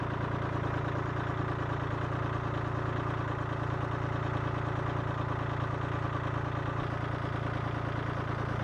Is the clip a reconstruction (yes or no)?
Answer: no